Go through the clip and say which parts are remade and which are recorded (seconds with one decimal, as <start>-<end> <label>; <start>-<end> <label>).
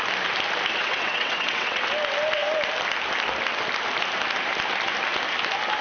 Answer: 0.0-0.8 recorded; 0.8-1.8 remade; 1.8-5.8 recorded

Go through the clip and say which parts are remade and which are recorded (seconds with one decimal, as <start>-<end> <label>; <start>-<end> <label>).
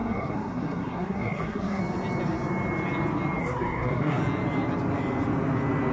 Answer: 0.0-1.8 remade; 1.8-3.4 recorded; 3.4-4.2 remade; 4.2-5.9 recorded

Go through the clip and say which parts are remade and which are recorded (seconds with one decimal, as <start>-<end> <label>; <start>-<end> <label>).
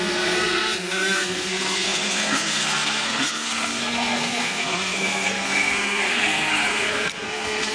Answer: 0.0-7.7 remade